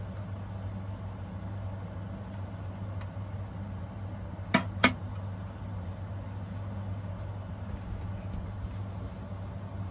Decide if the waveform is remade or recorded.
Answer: recorded